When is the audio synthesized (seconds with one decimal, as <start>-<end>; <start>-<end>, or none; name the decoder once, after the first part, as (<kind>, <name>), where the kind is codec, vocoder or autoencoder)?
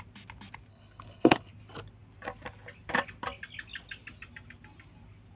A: 0.7-1.5 (codec, HILCodec)